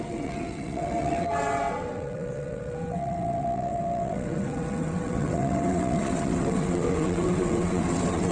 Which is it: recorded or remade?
remade